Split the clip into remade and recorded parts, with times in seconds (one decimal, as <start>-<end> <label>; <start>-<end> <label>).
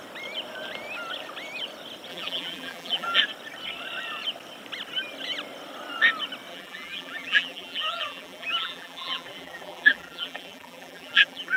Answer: 0.0-2.1 recorded; 2.1-3.2 remade; 3.2-6.5 recorded; 6.5-11.6 remade